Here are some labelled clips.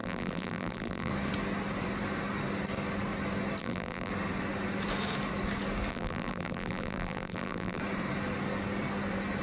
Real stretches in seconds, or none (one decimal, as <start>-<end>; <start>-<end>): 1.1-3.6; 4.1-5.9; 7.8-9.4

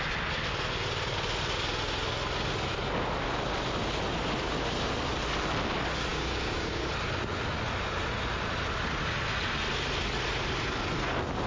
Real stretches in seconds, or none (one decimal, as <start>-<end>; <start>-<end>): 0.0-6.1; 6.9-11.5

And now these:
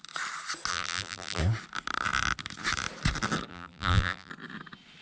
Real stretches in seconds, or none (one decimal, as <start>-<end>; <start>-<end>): 0.0-0.7; 1.4-3.5; 4.3-5.0

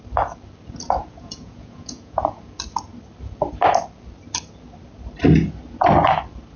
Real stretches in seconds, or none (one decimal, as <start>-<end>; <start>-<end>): 0.0-1.0; 2.4-6.6

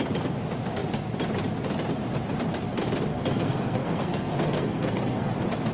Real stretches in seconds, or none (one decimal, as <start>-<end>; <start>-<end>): 0.0-3.1; 5.3-5.7

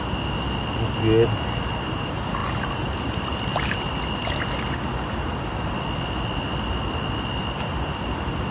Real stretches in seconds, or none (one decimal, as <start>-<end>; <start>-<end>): 0.0-2.4; 4.1-7.4